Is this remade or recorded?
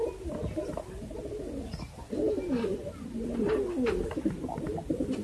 recorded